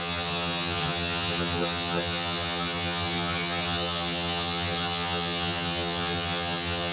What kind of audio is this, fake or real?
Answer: fake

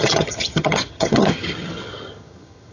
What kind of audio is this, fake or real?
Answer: fake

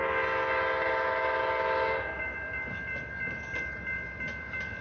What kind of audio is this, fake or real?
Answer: real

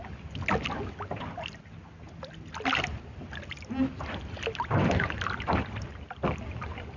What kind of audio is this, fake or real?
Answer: real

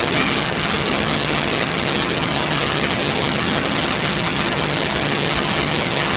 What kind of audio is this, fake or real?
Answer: fake